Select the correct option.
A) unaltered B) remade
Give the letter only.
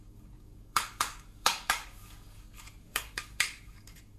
B